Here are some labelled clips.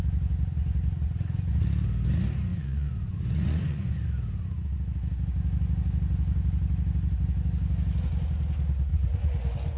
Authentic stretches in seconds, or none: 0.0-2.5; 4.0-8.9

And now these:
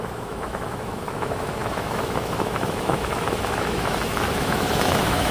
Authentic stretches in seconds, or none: none

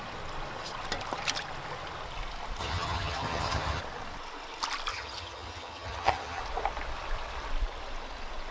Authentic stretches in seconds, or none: 0.0-2.6; 3.8-4.9; 6.4-8.5